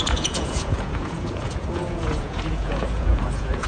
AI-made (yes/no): yes